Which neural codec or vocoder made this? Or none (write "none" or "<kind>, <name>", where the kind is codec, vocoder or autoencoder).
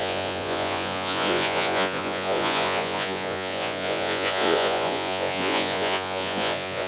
vocoder, Vocos